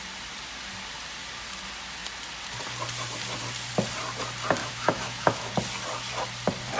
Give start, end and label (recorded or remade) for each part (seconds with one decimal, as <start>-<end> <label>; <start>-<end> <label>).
0.0-4.6 recorded; 4.6-5.5 remade; 5.5-6.8 recorded